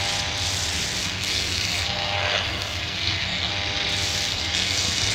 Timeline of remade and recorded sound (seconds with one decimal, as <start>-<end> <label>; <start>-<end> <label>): 0.0-1.0 recorded; 1.0-3.5 remade; 3.5-4.3 recorded; 4.3-5.1 remade

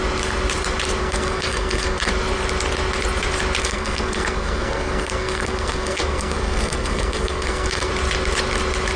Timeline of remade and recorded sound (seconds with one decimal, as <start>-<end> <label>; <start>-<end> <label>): 0.0-1.0 recorded; 1.0-2.1 remade; 2.1-3.6 recorded; 3.6-7.9 remade; 7.9-9.0 recorded

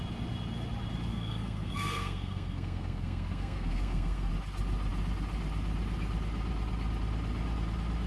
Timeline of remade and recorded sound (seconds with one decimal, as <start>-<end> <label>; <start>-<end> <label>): 0.0-1.1 recorded; 1.1-4.3 remade; 4.3-8.1 recorded

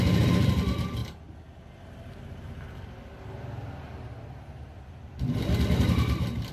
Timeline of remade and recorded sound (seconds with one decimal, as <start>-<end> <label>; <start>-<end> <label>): 0.0-6.5 recorded

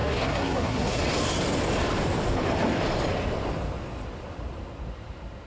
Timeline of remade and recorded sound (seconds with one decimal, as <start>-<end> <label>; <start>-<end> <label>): 0.0-1.0 remade; 1.0-5.5 recorded

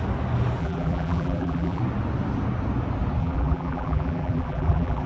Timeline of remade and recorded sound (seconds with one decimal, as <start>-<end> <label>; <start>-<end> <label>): 0.0-0.6 recorded; 0.6-1.8 remade; 1.8-3.2 recorded; 3.2-5.1 remade